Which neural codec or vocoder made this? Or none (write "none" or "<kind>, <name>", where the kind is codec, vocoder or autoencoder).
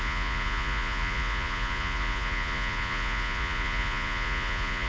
vocoder, Vocos